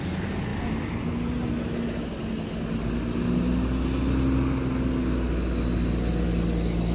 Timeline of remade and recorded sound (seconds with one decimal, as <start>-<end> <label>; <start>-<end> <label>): 0.0-6.9 recorded

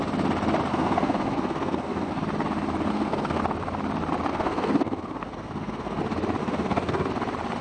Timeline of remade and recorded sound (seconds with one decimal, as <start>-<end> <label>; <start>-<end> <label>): 0.0-0.7 recorded; 0.7-2.1 remade; 2.1-2.9 recorded; 2.9-3.4 remade; 3.4-4.3 recorded; 4.3-6.0 remade; 6.0-6.4 recorded; 6.4-7.1 remade; 7.1-7.6 recorded

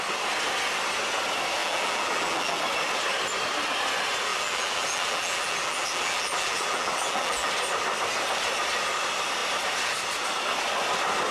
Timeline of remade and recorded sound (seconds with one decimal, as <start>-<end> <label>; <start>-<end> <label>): 0.0-1.6 recorded; 1.6-2.6 remade; 2.6-4.3 recorded; 4.3-7.5 remade; 7.5-11.3 recorded

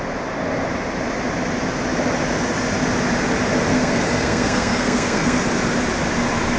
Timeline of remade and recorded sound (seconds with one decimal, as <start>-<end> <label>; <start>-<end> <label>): 0.0-3.7 recorded; 3.7-5.4 remade; 5.4-6.6 recorded

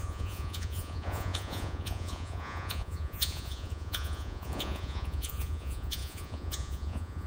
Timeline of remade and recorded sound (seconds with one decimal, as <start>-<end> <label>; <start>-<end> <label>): 0.0-7.3 remade